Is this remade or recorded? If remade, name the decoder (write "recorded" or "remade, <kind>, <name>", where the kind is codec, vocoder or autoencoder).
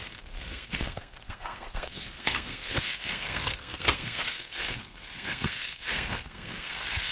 remade, codec, SNAC